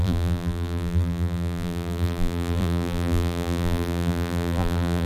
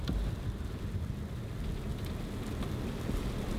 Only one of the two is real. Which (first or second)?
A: second